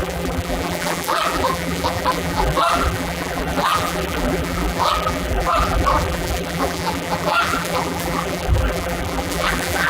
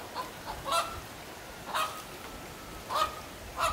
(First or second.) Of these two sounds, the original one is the second